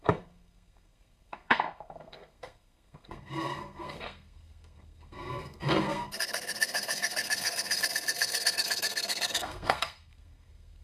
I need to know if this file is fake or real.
fake